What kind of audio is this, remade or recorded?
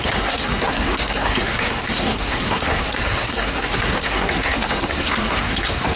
remade